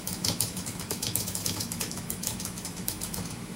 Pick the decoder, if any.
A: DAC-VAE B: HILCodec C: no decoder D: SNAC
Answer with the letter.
A